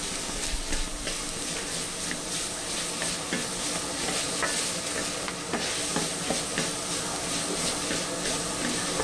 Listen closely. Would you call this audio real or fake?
real